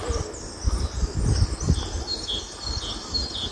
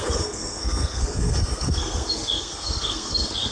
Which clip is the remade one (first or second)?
second